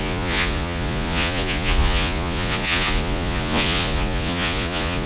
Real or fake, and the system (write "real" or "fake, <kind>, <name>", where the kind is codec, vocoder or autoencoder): fake, vocoder, Vocos